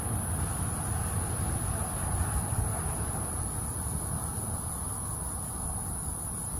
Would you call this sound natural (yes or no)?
yes